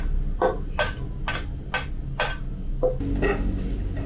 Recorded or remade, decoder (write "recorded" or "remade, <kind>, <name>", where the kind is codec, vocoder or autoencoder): recorded